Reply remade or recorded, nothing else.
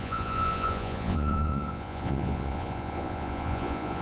remade